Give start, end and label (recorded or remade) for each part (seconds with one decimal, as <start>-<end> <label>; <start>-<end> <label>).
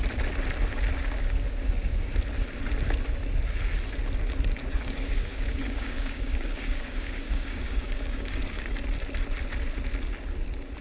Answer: 0.0-0.9 recorded; 0.9-2.1 remade; 2.1-4.6 recorded; 4.6-8.7 remade; 8.7-10.8 recorded